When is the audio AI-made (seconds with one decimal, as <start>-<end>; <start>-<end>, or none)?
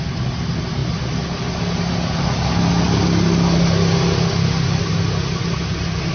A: none